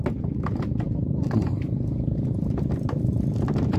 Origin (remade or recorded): remade